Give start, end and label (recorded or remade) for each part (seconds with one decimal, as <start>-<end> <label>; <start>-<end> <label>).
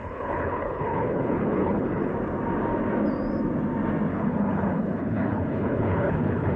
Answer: 0.0-2.1 remade; 2.1-4.1 recorded; 4.1-6.6 remade